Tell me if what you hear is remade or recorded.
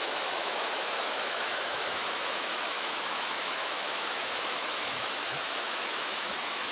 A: remade